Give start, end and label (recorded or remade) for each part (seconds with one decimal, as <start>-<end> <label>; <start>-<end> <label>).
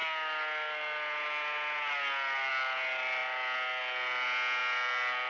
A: 0.0-5.3 recorded